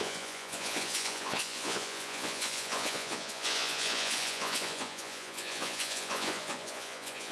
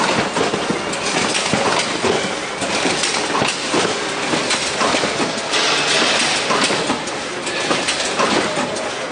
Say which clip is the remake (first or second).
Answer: first